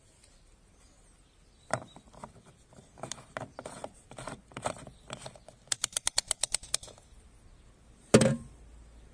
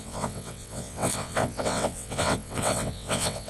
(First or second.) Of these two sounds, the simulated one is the second